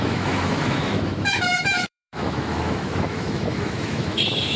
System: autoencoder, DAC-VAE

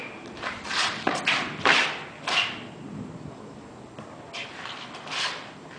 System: none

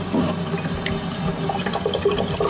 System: none